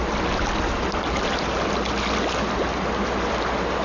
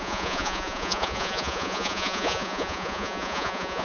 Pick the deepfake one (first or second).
second